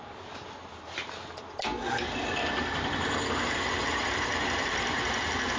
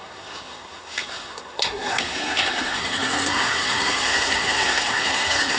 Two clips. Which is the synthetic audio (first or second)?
second